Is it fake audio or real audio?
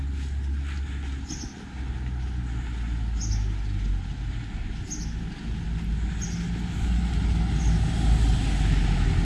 real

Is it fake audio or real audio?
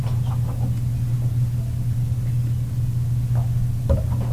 real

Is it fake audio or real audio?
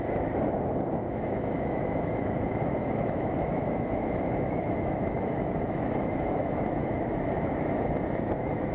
fake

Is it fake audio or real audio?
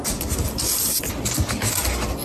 real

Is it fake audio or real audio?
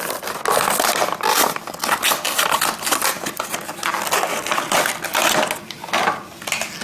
real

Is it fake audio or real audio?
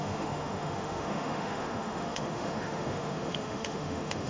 fake